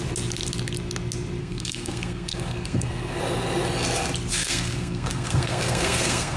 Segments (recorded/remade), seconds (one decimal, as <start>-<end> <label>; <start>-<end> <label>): 0.0-1.4 recorded; 1.4-3.2 remade; 3.2-4.3 recorded; 4.3-6.4 remade